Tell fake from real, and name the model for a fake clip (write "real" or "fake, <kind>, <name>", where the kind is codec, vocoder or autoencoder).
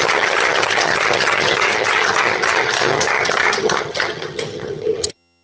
fake, vocoder, HiFi-GAN